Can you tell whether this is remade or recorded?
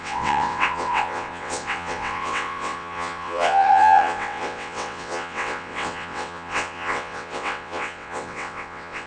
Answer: remade